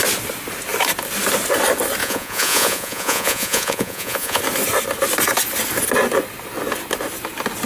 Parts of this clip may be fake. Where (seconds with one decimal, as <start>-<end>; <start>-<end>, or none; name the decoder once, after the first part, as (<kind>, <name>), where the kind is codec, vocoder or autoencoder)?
2.0-4.4 (vocoder, Vocos)